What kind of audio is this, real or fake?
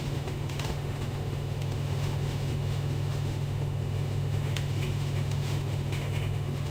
fake